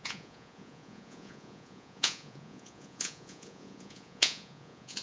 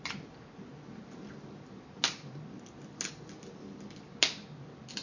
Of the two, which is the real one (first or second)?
second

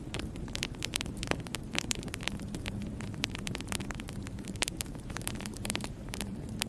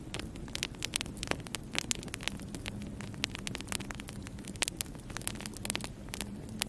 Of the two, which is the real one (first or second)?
second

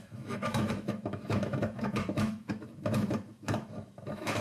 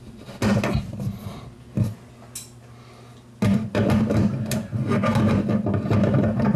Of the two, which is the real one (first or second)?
second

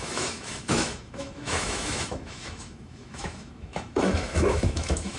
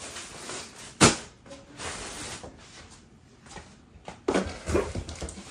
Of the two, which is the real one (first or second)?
second